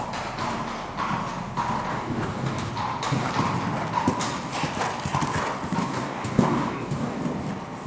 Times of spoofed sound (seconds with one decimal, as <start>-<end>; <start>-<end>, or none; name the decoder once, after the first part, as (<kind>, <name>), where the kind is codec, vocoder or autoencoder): 1.9-2.7 (codec, DAC); 5.8-7.2